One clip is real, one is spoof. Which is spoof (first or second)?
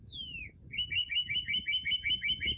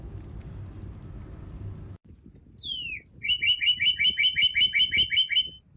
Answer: first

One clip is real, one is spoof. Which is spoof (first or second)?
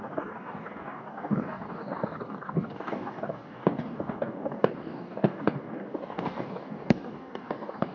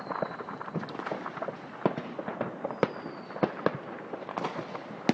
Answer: first